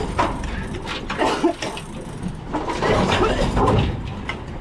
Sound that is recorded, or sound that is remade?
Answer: recorded